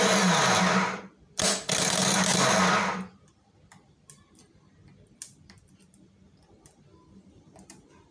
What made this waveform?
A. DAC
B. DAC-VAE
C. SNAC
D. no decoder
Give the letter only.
D